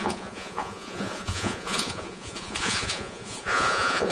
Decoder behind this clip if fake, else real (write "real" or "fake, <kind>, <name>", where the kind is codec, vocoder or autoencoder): fake, vocoder, Vocos